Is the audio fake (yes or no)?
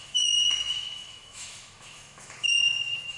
yes